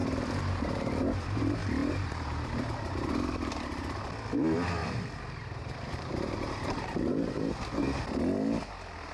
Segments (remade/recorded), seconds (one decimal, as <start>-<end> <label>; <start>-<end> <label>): 0.0-1.0 remade; 1.0-1.8 recorded; 1.8-2.9 remade; 2.9-4.8 recorded; 4.8-7.5 remade; 7.5-9.1 recorded